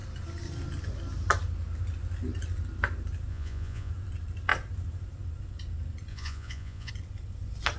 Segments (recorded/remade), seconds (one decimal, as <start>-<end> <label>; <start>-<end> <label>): 0.0-3.3 recorded; 3.3-3.9 remade; 3.9-6.1 recorded; 6.1-6.9 remade; 6.9-7.8 recorded